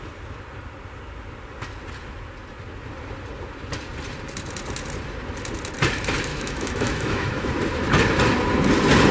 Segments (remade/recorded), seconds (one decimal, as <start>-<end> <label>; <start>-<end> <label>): 0.0-6.3 recorded; 6.3-7.5 remade; 7.5-9.1 recorded